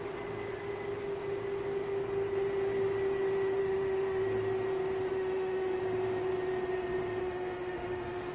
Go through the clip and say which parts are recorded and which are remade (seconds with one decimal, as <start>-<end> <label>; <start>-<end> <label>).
0.0-3.6 recorded; 3.6-4.2 remade; 4.2-5.1 recorded; 5.1-5.8 remade; 5.8-7.2 recorded; 7.2-8.3 remade